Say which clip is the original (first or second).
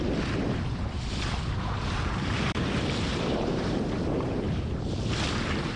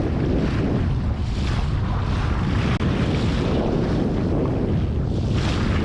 second